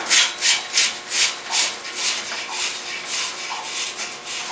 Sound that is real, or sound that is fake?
real